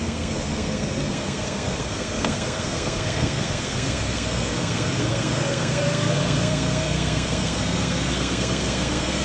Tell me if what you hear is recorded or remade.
remade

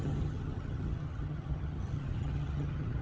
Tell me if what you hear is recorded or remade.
remade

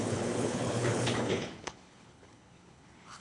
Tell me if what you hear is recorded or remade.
remade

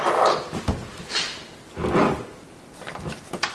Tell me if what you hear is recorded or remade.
recorded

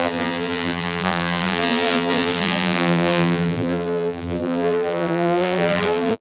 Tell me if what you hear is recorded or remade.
remade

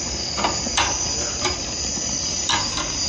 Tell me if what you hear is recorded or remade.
recorded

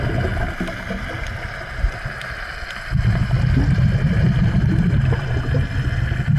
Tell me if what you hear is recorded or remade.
recorded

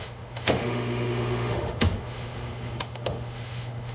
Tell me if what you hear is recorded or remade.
remade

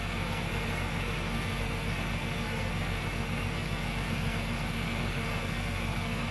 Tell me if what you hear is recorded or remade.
remade